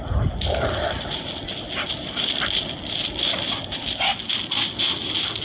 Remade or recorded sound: recorded